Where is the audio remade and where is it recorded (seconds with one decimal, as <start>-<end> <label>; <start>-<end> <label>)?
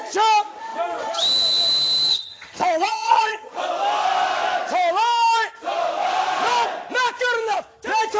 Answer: 0.0-2.1 recorded; 2.1-3.6 remade; 3.6-8.2 recorded